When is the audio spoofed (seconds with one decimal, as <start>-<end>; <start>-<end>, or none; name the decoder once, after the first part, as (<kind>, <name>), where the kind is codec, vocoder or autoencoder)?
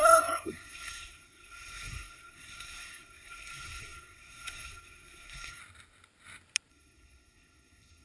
0.0-5.6 (codec, SNAC); 6.7-8.0